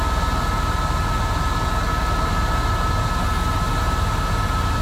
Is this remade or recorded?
recorded